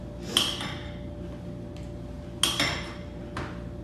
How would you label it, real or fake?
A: real